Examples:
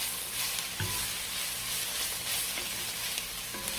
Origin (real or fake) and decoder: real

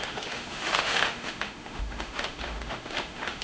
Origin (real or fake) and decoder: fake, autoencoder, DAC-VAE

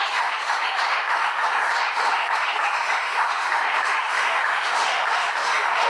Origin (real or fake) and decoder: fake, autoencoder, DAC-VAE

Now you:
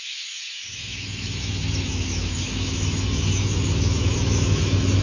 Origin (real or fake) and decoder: fake, autoencoder, DAC-VAE